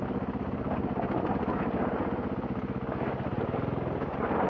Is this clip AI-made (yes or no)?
no